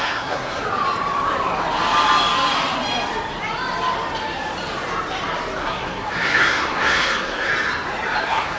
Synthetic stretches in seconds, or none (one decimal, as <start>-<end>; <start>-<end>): 0.0-0.6; 5.6-7.5; 8.2-8.6